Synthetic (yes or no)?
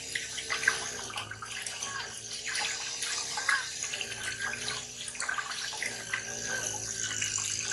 no